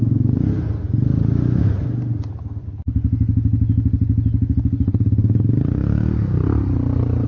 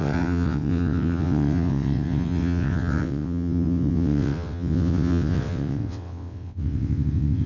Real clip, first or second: first